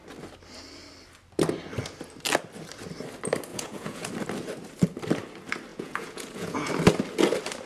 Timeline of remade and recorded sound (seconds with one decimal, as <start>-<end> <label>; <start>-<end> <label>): 0.0-3.5 recorded; 3.5-4.1 remade; 4.1-5.7 recorded; 5.7-6.7 remade; 6.7-7.7 recorded